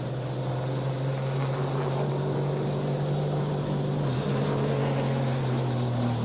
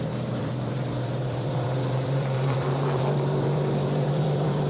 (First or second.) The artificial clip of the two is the second